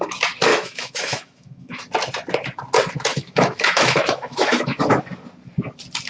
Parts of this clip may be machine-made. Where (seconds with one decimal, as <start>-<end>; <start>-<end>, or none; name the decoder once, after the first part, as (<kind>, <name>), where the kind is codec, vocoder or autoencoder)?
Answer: 0.5-1.8 (autoencoder, DAC-VAE); 3.1-4.8